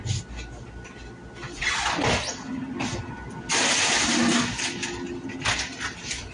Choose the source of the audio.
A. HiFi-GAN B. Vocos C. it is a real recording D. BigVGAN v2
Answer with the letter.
C